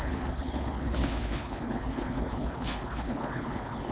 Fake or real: fake